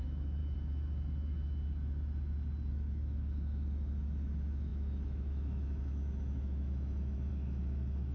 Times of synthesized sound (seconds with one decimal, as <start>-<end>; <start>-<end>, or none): 0.0-0.4; 2.7-8.1